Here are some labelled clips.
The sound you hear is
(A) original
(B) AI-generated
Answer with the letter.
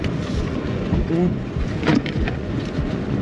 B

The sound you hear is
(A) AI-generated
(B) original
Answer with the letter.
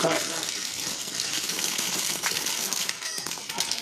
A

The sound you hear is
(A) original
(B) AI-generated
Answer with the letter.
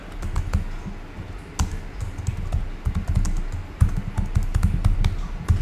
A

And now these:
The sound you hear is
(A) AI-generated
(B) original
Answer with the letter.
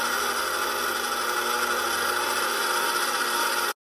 B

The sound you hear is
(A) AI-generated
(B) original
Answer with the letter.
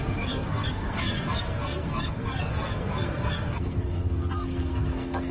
A